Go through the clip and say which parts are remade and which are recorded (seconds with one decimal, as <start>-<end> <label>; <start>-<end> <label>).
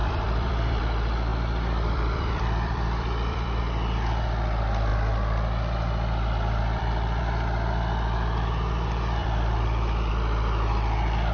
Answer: 0.0-0.8 remade; 0.8-1.3 recorded; 1.3-3.6 remade; 3.6-4.9 recorded; 4.9-7.2 remade; 7.2-9.2 recorded; 9.2-10.1 remade; 10.1-11.3 recorded